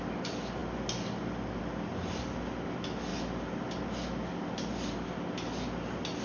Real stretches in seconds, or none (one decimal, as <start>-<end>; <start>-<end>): 0.0-6.2